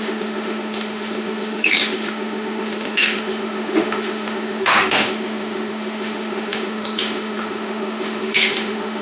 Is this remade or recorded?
remade